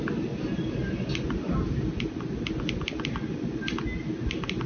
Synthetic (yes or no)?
no